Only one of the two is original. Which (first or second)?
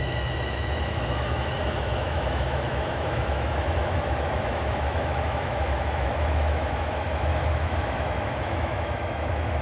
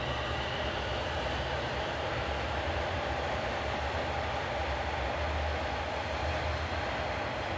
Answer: second